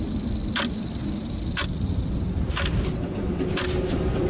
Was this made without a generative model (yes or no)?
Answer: no